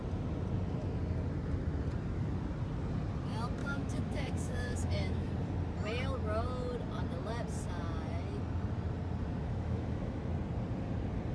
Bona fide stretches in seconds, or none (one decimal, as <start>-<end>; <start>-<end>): 0.0-3.6; 5.3-9.4; 10.2-11.3